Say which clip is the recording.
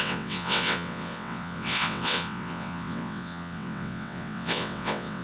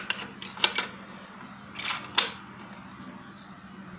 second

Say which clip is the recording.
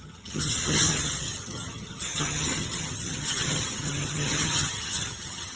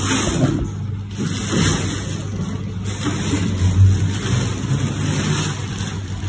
second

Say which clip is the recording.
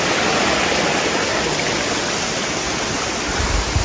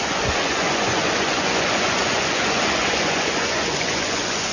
first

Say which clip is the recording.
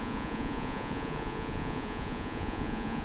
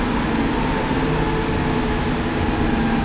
second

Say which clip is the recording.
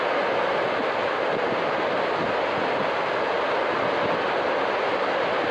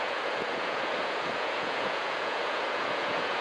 first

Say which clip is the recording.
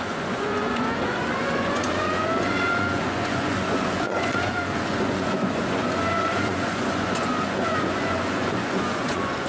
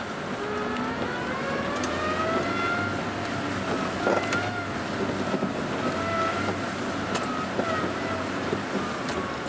second